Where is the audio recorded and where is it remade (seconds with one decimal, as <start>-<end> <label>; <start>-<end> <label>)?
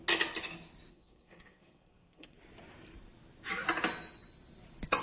0.0-0.9 recorded; 0.9-2.4 remade; 2.4-5.0 recorded